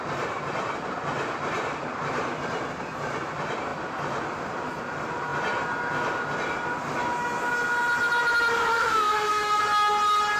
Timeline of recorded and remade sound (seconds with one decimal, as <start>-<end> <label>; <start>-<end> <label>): 0.0-8.7 recorded; 8.7-9.6 remade; 9.6-10.4 recorded